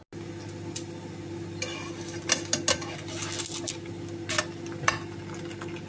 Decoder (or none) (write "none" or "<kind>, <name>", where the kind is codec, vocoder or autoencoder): none